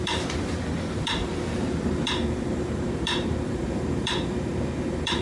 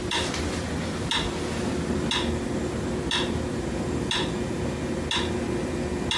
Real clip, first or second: second